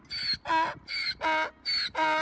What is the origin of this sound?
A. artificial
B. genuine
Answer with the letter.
B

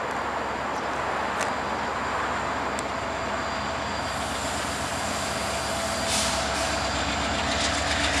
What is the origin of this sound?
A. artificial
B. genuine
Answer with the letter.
B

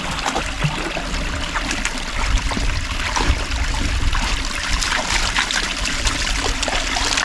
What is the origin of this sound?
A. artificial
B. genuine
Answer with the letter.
B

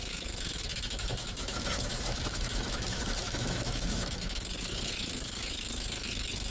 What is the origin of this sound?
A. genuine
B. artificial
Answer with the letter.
B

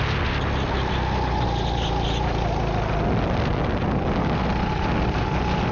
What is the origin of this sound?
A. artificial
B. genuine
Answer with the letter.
B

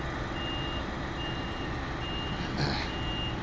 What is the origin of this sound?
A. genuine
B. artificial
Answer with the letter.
A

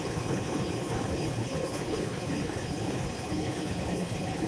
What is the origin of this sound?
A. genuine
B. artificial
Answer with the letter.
B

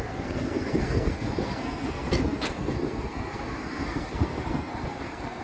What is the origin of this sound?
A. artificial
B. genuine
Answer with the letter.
A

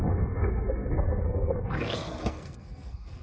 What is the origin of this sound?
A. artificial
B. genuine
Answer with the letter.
A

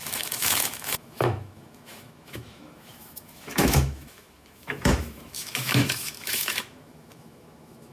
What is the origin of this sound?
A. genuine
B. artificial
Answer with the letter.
B